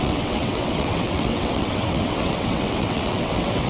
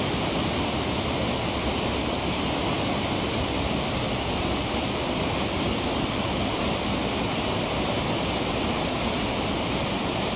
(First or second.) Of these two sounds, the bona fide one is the second